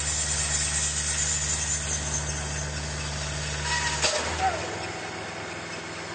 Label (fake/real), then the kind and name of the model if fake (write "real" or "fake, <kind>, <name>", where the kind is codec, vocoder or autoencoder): real